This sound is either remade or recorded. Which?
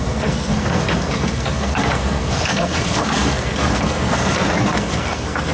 remade